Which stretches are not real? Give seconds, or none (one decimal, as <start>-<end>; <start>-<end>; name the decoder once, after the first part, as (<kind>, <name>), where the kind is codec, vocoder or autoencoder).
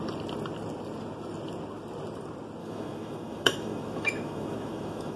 2.6-5.2 (autoencoder, DAC-VAE)